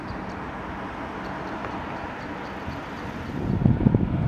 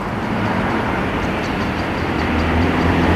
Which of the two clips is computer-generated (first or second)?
second